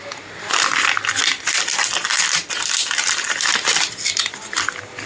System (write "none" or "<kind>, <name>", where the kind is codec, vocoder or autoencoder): none